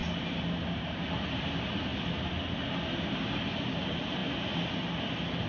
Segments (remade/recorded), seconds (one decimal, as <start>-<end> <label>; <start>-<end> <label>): 0.0-0.6 recorded; 0.6-1.9 remade; 1.9-3.8 recorded; 3.8-4.2 remade; 4.2-5.5 recorded